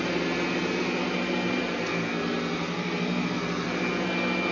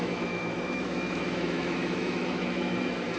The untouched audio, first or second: first